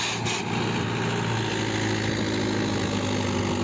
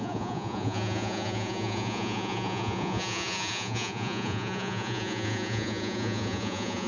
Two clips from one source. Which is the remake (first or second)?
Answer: second